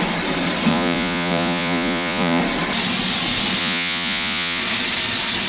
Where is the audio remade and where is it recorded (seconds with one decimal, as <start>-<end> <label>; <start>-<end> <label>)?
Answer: 0.0-0.7 recorded; 0.7-2.4 remade; 2.4-3.6 recorded; 3.6-4.6 remade; 4.6-5.5 recorded